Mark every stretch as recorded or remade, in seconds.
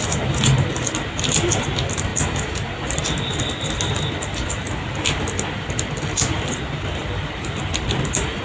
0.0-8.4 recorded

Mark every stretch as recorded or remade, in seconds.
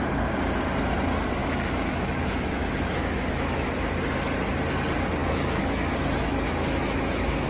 0.0-1.4 recorded; 1.4-4.0 remade; 4.0-5.2 recorded; 5.2-7.5 remade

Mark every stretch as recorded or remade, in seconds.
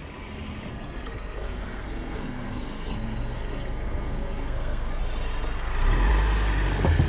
0.0-0.7 recorded; 0.7-5.0 remade; 5.0-7.1 recorded